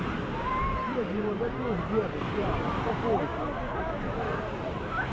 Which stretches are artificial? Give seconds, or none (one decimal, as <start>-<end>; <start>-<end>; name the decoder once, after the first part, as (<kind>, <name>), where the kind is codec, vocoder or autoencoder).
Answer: 0.5-2.9 (vocoder, BigVGAN v2); 3.3-3.8